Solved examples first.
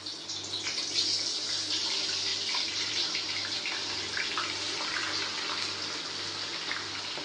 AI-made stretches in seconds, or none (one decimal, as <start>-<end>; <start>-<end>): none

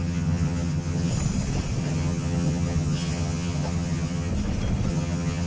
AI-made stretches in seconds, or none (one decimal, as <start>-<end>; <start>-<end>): 0.0-1.1; 1.8-4.3; 4.9-5.5

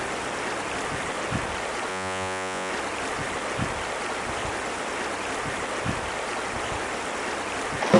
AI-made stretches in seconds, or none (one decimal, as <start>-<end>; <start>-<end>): 1.9-2.7